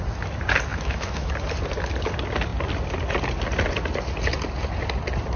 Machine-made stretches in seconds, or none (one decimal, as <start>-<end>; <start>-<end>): 0.7-1.3